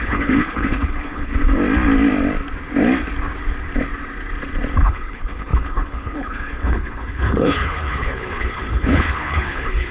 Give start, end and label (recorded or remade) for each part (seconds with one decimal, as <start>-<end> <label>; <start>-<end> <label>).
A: 0.0-1.3 remade; 1.3-4.8 recorded; 4.8-9.9 remade